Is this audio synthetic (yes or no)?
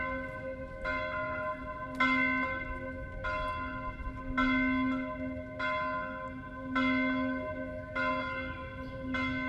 no